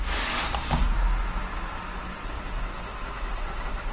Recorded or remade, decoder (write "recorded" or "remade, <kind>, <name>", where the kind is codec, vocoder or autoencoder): recorded